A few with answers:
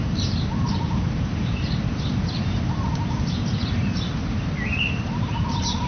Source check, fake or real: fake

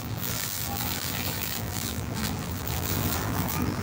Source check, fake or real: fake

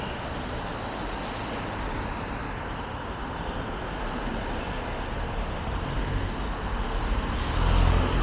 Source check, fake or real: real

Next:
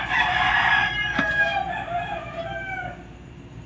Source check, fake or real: fake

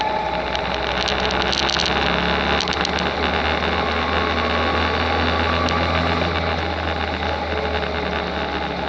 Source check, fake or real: real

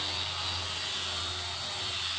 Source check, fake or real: real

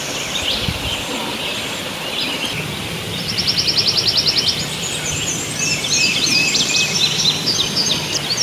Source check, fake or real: real